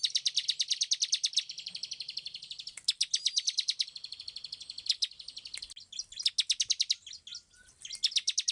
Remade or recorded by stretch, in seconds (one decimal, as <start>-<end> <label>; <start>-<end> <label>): 0.0-0.4 recorded; 0.4-4.2 remade; 4.2-8.5 recorded